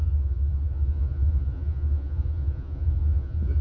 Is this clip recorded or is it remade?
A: remade